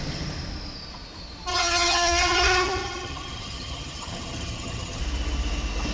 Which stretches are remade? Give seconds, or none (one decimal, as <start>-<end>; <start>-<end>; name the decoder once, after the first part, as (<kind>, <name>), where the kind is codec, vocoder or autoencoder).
1.5-5.0 (vocoder, HiFi-GAN)